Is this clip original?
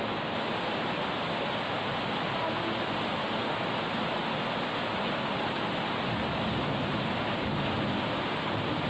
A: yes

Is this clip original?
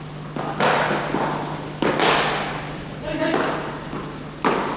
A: yes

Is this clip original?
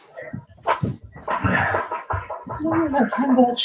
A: yes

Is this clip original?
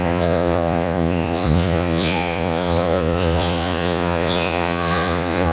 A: no